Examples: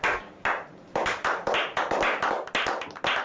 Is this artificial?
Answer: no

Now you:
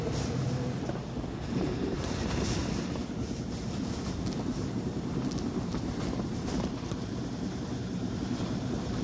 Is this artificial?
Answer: yes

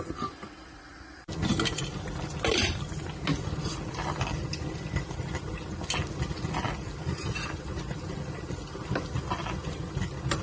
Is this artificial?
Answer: no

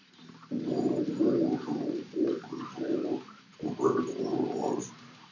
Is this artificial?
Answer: yes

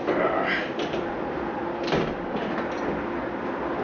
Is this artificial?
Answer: yes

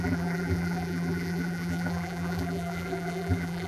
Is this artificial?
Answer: yes